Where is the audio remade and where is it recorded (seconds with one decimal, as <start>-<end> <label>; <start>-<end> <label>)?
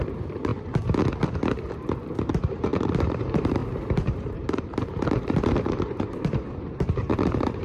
0.0-0.5 remade; 0.5-2.3 recorded; 2.3-7.6 remade